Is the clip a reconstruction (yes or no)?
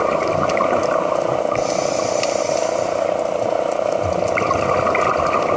no